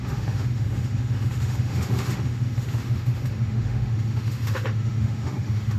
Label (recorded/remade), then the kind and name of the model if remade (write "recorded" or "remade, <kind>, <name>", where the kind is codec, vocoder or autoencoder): remade, autoencoder, DAC-VAE